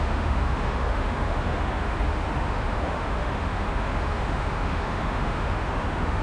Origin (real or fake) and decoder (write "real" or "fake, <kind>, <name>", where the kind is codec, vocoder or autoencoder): fake, autoencoder, DAC-VAE